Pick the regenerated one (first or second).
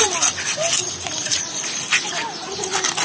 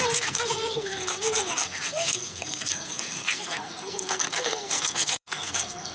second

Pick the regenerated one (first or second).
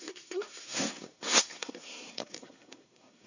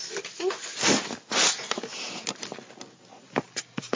first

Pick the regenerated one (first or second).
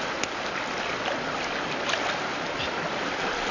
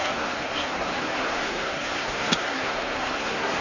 second